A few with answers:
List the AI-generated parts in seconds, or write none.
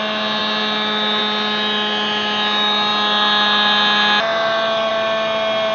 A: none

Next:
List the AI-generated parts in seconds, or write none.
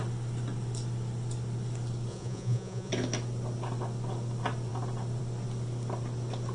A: 2.1-2.9 (vocoder, Vocos)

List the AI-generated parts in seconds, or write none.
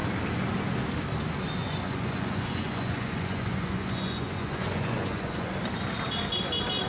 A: 1.6-5.5 (vocoder, Vocos)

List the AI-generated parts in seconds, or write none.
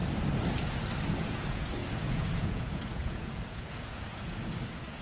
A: 1.1-5.0 (vocoder, Vocos)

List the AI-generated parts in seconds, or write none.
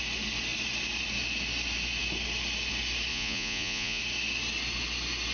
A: 3.1-4.0 (vocoder, Vocos)